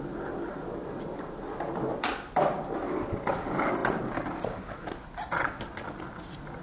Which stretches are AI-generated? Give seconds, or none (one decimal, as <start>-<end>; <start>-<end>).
none